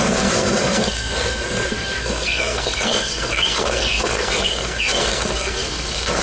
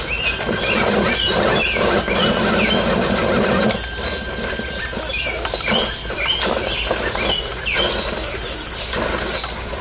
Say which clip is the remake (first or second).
first